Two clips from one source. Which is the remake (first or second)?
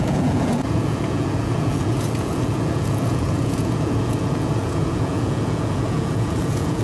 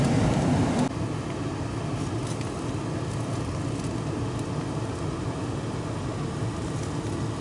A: first